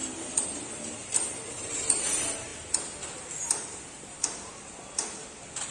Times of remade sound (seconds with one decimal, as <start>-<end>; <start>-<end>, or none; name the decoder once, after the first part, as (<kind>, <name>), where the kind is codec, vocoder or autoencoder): 0.0-1.7 (vocoder, BigVGAN v2)

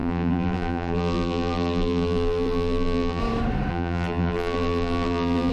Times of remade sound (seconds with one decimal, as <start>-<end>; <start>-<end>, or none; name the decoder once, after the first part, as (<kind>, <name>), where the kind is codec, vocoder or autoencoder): 0.0-3.2 (vocoder, BigVGAN v2); 3.7-5.5

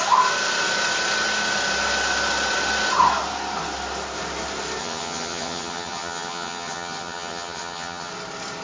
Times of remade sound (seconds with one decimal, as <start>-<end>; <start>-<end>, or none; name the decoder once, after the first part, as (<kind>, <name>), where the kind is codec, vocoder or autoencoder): 4.8-8.1 (vocoder, HiFi-GAN)

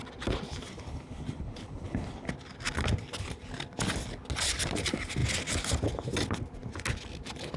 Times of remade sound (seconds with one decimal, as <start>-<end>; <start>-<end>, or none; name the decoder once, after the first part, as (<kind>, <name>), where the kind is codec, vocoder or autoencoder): 0.7-2.3 (codec, HILCodec)